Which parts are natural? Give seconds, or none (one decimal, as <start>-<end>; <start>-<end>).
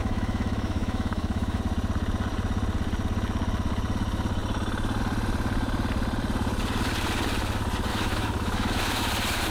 1.6-7.9; 9.0-9.5